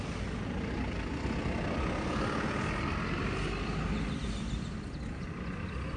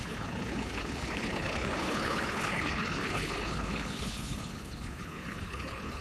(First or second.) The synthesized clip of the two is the second